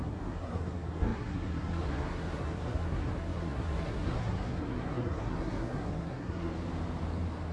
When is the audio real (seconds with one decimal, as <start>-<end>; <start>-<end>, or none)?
6.5-7.5